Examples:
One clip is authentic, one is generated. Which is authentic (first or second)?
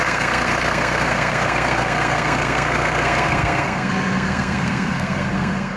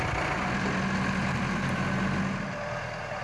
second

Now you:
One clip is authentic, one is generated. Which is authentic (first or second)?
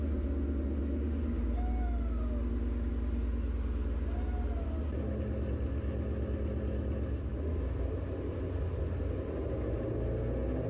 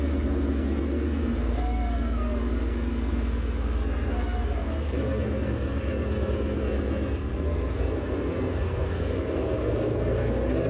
first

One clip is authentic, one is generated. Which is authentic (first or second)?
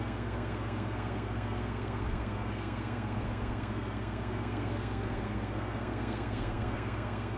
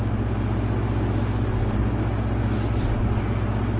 second